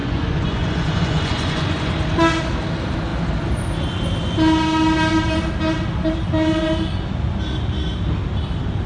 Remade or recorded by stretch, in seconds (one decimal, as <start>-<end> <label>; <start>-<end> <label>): 0.0-1.9 remade; 1.9-8.9 recorded